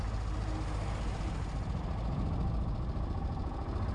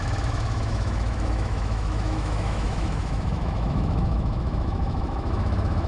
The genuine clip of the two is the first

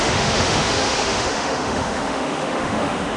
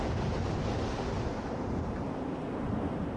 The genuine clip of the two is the second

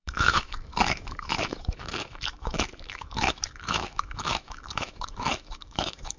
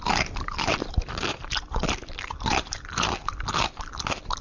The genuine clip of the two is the second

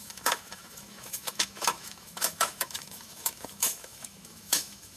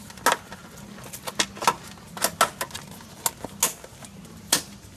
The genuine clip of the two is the second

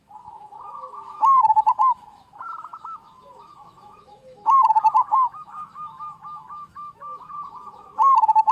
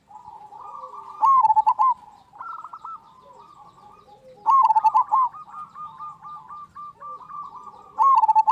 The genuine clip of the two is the second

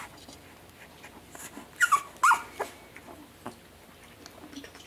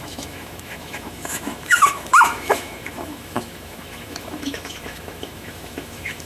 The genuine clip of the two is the first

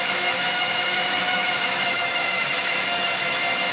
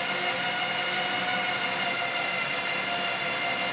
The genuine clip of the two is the second